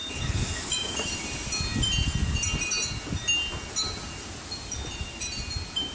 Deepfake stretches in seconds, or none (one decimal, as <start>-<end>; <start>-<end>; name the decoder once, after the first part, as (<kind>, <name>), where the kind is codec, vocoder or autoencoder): 0.0-1.1 (autoencoder, DAC-VAE)